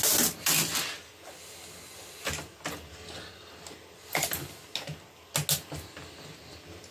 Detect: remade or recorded recorded